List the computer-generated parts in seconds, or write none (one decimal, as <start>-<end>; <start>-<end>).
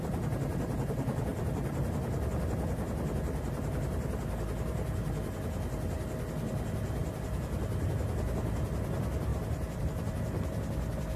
1.3-2.3; 7.0-7.9; 9.3-9.8